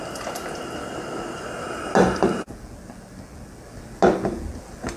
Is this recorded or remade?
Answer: recorded